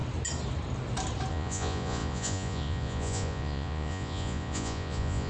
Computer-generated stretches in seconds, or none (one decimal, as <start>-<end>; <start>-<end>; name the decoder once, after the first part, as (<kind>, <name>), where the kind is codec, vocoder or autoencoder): 1.3-5.3 (vocoder, Vocos)